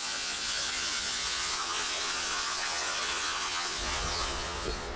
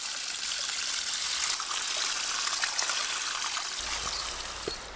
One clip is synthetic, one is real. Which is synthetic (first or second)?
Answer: first